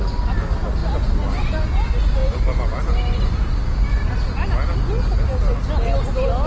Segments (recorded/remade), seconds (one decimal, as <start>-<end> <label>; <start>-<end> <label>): 0.0-6.5 recorded